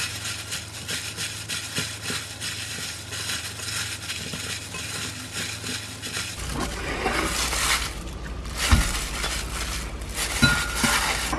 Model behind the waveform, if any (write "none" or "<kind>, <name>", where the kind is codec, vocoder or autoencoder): none